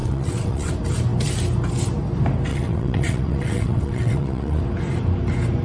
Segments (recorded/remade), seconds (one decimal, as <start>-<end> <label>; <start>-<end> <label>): 0.0-0.7 remade; 0.7-2.5 recorded; 2.5-4.6 remade; 4.6-5.6 recorded